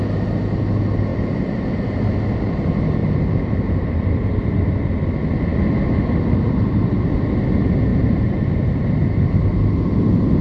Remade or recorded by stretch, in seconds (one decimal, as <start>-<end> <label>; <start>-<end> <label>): 0.0-3.0 recorded; 3.0-4.6 remade; 4.6-7.9 recorded; 7.9-9.4 remade; 9.4-10.4 recorded